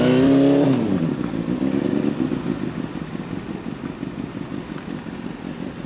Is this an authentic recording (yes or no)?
yes